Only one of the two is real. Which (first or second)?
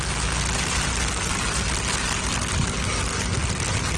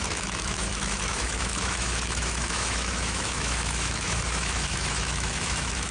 first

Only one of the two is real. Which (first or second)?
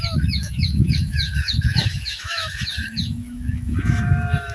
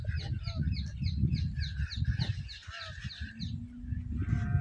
second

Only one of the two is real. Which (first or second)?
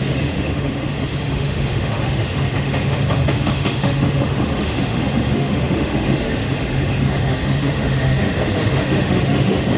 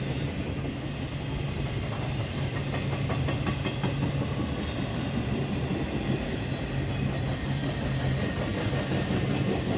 second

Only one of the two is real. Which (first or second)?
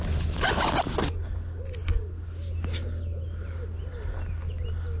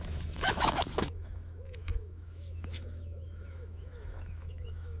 first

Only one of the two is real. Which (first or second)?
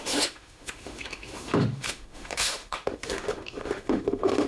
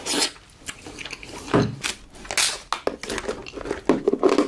second